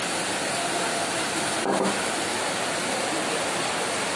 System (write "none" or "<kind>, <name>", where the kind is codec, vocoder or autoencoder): none